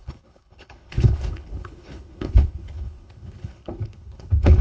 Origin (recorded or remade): remade